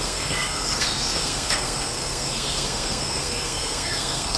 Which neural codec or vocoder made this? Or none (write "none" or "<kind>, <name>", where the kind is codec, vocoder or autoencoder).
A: codec, SNAC